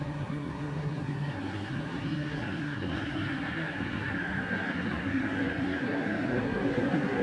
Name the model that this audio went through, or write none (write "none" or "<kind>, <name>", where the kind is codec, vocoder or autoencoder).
codec, SNAC